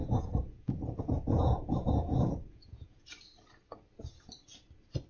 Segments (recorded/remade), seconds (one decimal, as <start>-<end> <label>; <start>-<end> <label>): 0.0-3.1 remade; 3.1-5.1 recorded